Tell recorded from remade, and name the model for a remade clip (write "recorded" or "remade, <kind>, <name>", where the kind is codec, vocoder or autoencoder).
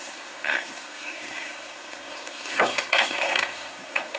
remade, codec, SNAC